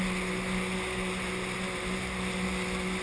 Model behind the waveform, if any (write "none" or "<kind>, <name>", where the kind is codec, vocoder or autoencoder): none